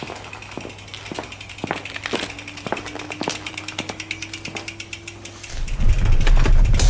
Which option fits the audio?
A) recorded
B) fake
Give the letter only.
A